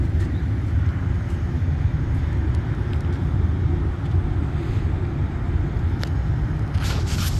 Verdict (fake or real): real